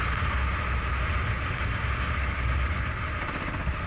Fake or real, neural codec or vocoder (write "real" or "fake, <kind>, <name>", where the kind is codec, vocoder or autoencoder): real